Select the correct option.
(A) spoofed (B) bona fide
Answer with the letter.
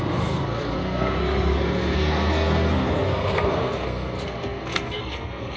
A